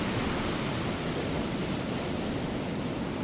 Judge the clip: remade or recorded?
recorded